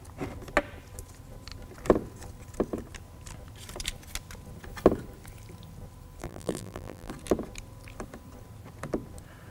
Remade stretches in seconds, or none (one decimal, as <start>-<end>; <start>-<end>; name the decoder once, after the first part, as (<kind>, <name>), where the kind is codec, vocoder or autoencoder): 6.2-7.1 (vocoder, BigVGAN v2)